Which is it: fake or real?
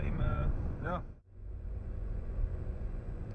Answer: fake